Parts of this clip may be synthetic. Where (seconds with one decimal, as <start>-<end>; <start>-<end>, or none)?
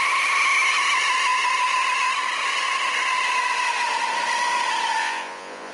5.0-5.7